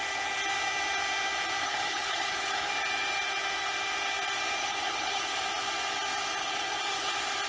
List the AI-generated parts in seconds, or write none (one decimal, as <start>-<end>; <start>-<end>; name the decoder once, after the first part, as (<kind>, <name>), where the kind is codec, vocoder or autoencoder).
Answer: 1.6-2.7 (codec, HILCodec); 4.6-5.4; 6.4-7.1